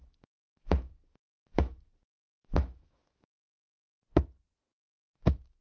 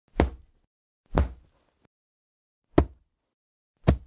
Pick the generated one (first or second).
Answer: first